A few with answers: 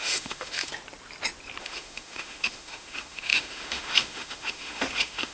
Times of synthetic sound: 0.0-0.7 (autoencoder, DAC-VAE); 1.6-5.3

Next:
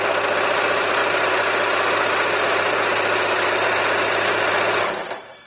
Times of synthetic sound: none

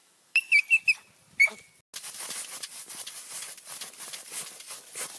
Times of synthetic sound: 0.0-0.6 (autoencoder, DAC-VAE)

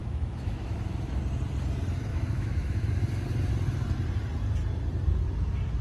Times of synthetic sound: 0.0-1.2 (autoencoder, DAC-VAE); 2.1-2.9

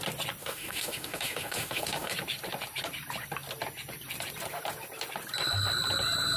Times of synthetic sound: 0.4-2.1 (autoencoder, DAC-VAE)

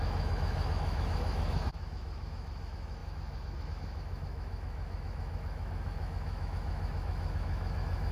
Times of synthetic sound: 0.0-8.1 (autoencoder, DAC-VAE)